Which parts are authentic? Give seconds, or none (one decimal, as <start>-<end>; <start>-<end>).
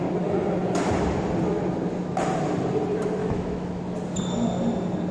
0.0-3.2; 3.8-5.1